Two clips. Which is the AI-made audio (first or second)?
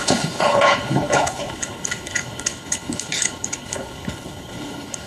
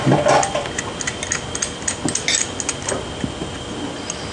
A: first